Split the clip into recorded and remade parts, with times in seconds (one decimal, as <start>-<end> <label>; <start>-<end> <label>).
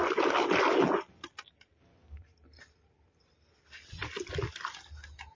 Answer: 0.0-5.3 recorded